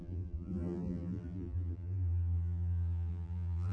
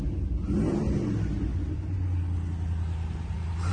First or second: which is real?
second